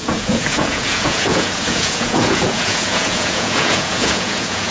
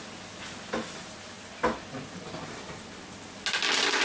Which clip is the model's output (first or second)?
first